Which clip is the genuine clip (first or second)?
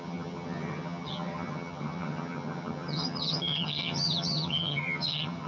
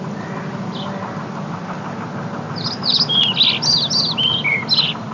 second